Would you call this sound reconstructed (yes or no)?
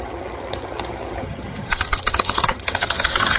yes